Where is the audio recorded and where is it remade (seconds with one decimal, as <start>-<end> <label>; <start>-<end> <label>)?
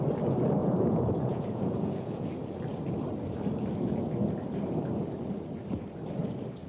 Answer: 0.0-0.6 recorded; 0.6-2.3 remade; 2.3-6.7 recorded